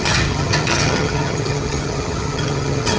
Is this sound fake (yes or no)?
yes